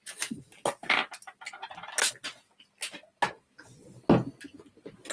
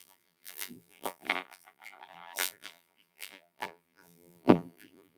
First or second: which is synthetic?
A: second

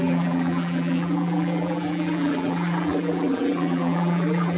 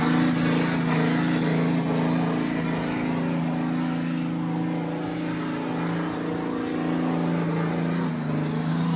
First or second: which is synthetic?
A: first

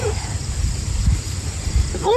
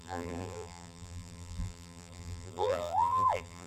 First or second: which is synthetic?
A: second